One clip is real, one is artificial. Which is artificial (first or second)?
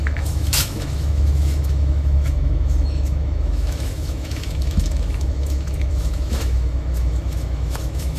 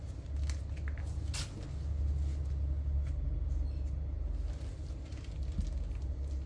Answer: first